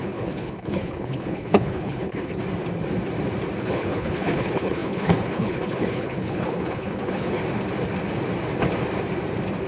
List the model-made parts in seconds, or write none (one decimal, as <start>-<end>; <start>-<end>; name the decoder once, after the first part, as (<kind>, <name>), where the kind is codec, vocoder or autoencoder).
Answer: 0.0-2.3 (codec, HILCodec); 3.6-7.4